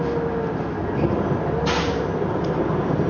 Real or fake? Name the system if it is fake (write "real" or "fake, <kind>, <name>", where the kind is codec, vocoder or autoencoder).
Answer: real